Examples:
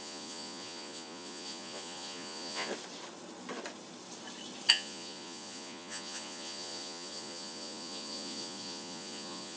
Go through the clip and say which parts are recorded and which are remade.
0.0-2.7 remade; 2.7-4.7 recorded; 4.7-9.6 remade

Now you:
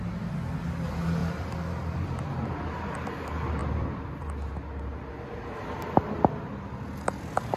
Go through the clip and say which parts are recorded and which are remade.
0.0-1.2 recorded; 1.2-2.5 remade; 2.5-3.6 recorded; 3.6-4.3 remade; 4.3-7.6 recorded

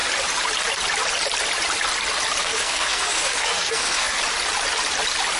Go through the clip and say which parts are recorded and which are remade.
0.0-2.4 recorded; 2.4-4.2 remade; 4.2-5.4 recorded